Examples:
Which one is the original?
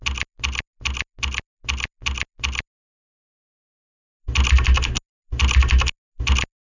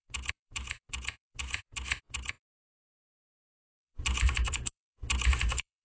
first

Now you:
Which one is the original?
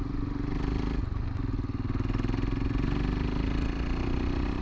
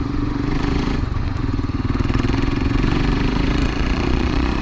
first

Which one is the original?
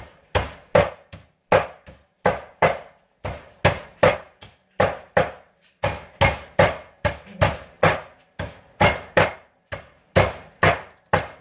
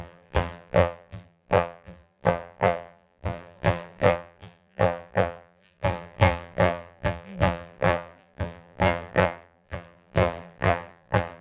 first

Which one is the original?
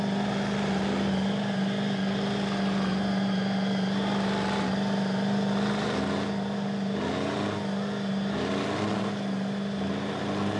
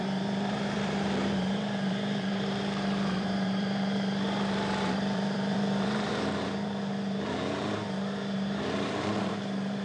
first